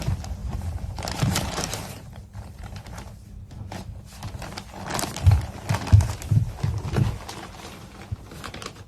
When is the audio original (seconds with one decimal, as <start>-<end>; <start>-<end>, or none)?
0.0-0.4; 3.1-8.9